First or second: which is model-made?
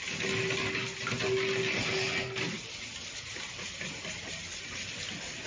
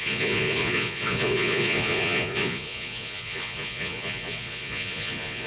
second